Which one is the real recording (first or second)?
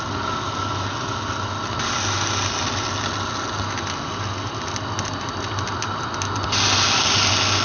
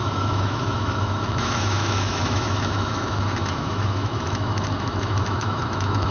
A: first